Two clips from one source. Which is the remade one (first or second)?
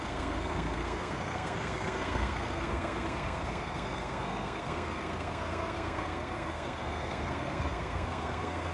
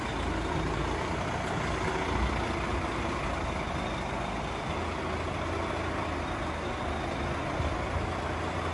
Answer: first